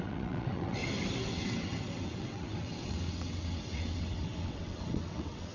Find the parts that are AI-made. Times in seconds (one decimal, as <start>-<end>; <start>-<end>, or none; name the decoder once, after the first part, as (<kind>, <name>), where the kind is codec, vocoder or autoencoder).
0.0-0.8 (vocoder, WaveNeXt); 1.3-5.5